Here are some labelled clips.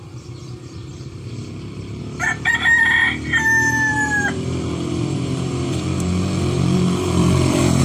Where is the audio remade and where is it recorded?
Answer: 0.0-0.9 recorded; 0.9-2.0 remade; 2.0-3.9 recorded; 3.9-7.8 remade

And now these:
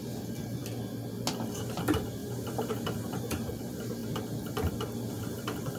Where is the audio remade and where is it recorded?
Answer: 0.0-0.6 remade; 0.6-1.6 recorded; 1.6-4.0 remade; 4.0-5.1 recorded; 5.1-5.8 remade